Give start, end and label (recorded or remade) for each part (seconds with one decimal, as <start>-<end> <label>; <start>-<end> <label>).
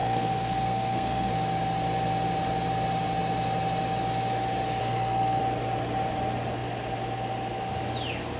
0.0-1.3 remade; 1.3-4.8 recorded; 4.8-5.4 remade; 5.4-8.4 recorded